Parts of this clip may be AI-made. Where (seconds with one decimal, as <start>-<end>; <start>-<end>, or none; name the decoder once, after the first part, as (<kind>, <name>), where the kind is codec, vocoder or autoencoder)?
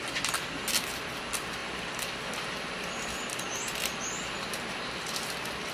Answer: none